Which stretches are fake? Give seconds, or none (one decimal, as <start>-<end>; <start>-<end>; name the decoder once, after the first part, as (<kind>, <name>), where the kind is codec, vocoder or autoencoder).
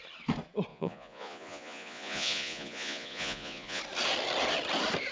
0.7-3.8 (vocoder, Vocos)